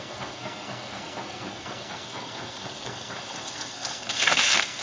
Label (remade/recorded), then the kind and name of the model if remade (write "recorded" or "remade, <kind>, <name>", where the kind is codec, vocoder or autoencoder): remade, codec, SNAC